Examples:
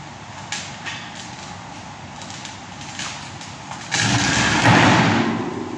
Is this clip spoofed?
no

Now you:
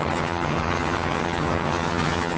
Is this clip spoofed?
yes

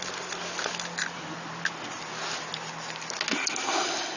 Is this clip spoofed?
no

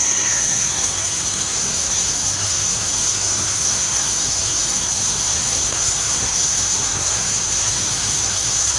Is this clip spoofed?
yes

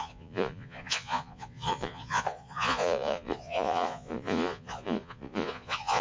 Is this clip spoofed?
yes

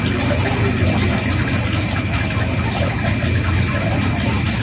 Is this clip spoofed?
no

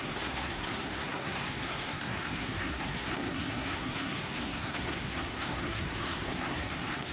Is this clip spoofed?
yes